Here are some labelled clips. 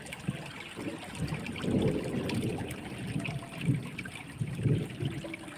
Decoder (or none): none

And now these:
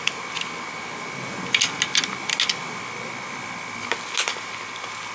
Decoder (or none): none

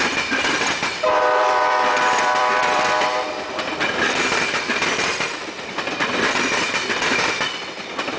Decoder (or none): vocoder, BigVGAN v2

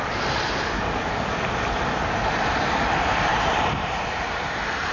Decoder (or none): vocoder, BigVGAN v2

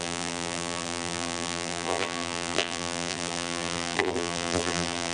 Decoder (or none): vocoder, BigVGAN v2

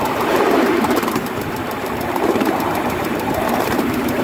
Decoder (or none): vocoder, BigVGAN v2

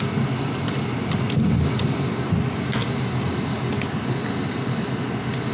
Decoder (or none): none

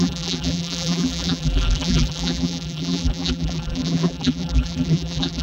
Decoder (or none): vocoder, BigVGAN v2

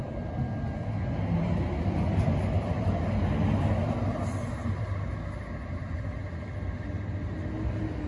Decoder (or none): none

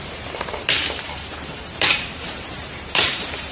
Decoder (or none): vocoder, BigVGAN v2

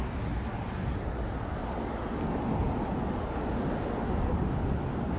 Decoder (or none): none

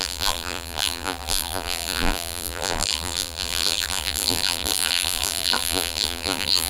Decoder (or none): vocoder, BigVGAN v2